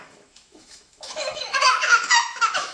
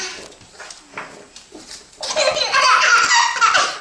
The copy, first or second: first